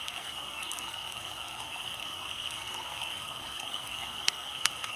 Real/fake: fake